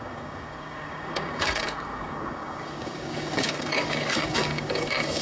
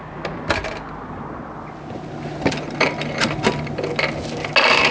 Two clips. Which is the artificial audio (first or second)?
first